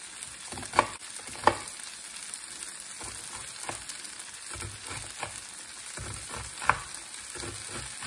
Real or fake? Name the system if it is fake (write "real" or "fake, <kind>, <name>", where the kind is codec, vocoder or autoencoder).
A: real